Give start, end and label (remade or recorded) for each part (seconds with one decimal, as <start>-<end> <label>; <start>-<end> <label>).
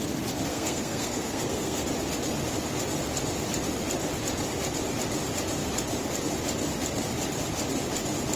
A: 0.0-0.5 recorded; 0.5-1.9 remade; 1.9-8.4 recorded